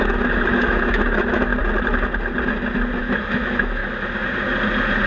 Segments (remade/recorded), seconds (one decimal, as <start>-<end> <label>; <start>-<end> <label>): 0.0-1.5 remade; 1.5-3.0 recorded; 3.0-3.8 remade; 3.8-5.1 recorded